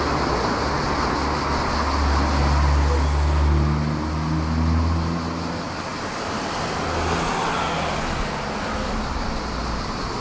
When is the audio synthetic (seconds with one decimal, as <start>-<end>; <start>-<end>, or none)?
none